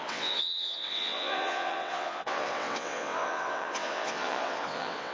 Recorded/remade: remade